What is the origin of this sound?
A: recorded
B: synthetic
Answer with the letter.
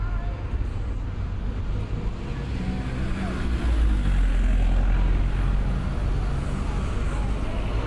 A